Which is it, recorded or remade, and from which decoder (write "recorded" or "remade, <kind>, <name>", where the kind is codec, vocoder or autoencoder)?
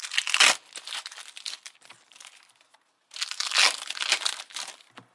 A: recorded